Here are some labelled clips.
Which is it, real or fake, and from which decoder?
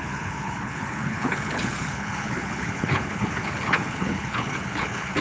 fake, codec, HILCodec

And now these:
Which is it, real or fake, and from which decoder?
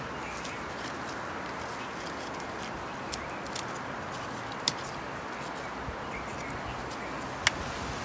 real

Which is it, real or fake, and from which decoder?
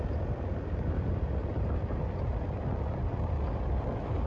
real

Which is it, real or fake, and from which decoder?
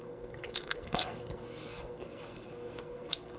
fake, codec, SNAC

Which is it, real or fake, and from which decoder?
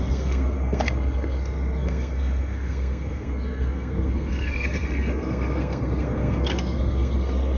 fake, codec, SNAC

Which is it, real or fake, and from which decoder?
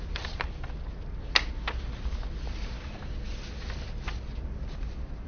real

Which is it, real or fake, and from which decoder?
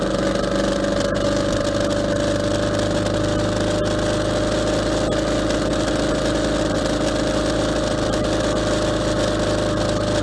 real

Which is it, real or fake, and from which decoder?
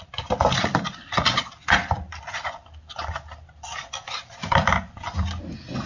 fake, vocoder, BigVGAN v2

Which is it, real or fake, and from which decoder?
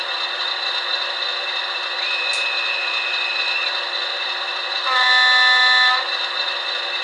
real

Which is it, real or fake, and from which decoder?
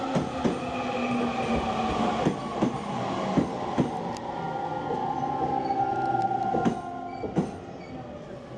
real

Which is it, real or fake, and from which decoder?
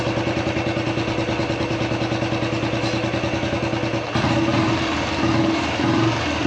real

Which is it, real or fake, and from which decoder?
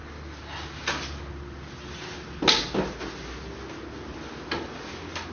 real